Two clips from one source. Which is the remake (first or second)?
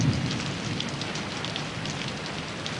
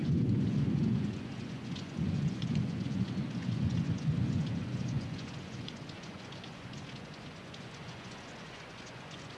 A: second